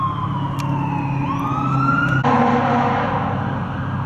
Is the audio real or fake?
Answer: real